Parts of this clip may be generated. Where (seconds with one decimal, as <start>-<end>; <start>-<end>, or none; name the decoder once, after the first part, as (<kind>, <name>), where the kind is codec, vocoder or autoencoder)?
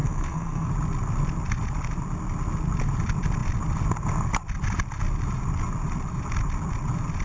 0.0-0.7 (codec, SNAC)